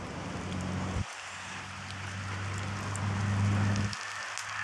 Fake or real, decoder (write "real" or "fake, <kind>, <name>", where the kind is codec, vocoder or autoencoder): real